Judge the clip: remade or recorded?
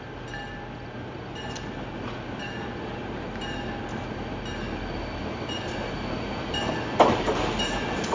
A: recorded